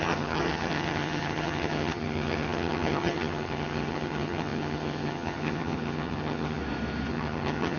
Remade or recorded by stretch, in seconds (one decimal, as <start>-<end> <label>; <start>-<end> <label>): 0.0-6.6 remade; 6.6-7.1 recorded; 7.1-7.8 remade